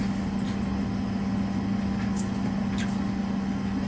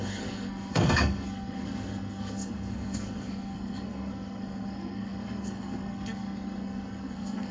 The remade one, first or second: second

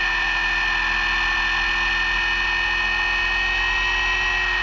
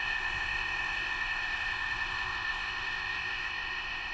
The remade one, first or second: second